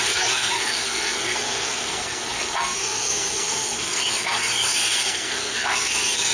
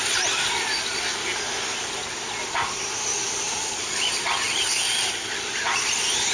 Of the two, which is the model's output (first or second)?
first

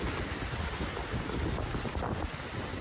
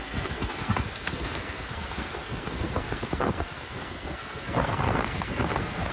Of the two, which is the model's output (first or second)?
second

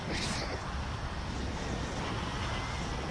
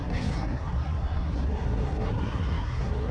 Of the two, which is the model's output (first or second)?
second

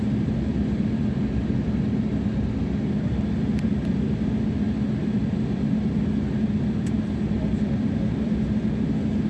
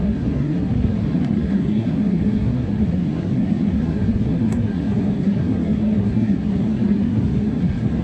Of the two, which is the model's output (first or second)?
second